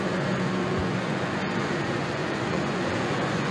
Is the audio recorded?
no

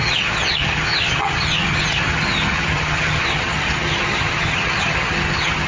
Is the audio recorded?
no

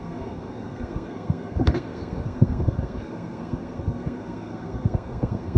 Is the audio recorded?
no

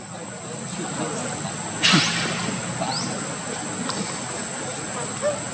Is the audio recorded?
yes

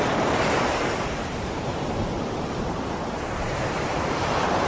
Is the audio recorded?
no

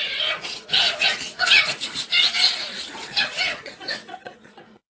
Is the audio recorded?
no